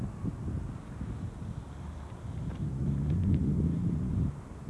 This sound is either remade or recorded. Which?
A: recorded